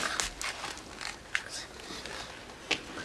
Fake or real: real